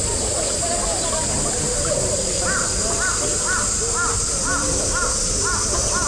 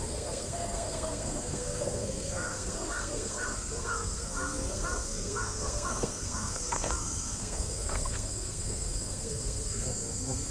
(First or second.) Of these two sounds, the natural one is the first